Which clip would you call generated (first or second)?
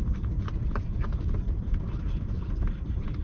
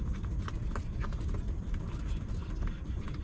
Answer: first